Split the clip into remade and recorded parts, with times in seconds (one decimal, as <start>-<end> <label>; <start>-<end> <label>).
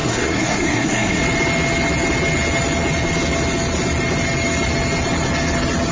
0.0-1.2 remade; 1.2-5.9 recorded